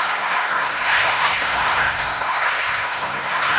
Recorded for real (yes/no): no